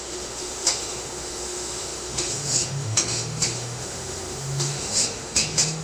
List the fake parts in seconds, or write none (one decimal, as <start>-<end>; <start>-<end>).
0.0-5.8